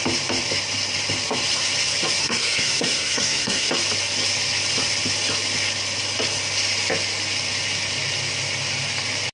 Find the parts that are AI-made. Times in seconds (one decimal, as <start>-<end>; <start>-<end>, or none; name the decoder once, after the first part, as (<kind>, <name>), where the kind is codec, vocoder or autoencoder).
2.2-3.7 (codec, SNAC)